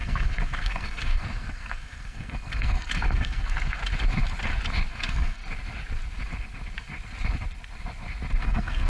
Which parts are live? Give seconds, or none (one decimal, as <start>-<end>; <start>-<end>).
3.8-4.9; 5.4-8.4